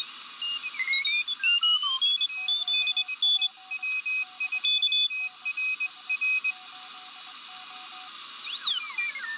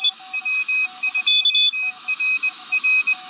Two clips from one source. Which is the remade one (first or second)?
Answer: second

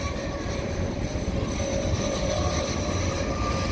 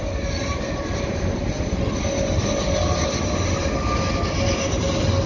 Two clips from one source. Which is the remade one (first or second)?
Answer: first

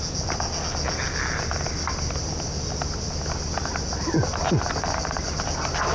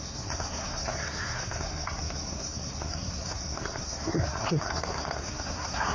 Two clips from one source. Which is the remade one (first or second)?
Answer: second